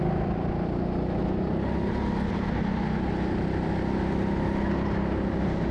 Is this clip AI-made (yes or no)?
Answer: no